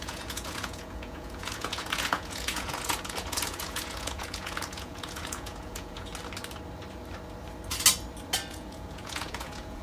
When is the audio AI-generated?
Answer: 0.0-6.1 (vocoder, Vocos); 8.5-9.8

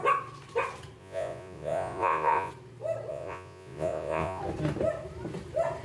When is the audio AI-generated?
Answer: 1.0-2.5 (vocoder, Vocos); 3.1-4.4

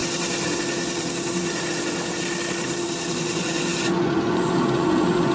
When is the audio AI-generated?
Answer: 3.1-5.3 (vocoder, Vocos)

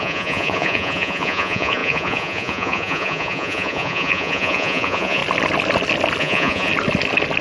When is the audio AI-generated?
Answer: 0.0-5.2 (vocoder, Vocos); 6.2-6.7

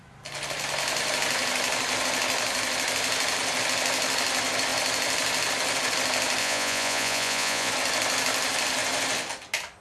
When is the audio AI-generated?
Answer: 6.4-7.7 (vocoder, Vocos)

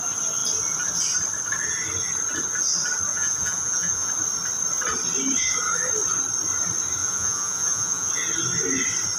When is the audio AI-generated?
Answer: 3.1-4.1 (vocoder, Vocos); 7.0-8.1

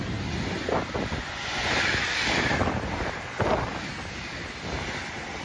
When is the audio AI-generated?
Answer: 1.1-1.7 (vocoder, Vocos)